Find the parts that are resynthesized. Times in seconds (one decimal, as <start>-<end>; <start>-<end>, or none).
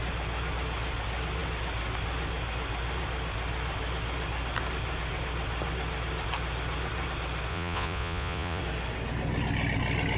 7.5-8.6